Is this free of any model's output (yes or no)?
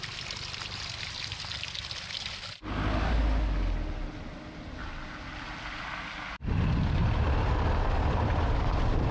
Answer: yes